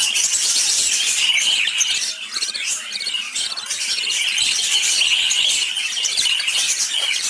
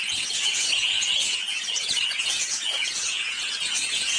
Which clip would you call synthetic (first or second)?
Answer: second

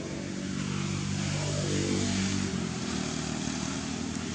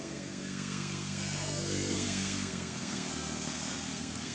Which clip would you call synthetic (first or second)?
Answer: second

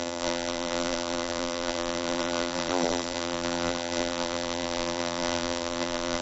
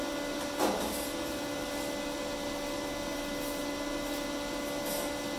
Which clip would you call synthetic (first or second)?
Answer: first